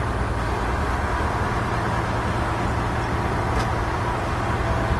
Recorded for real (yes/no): yes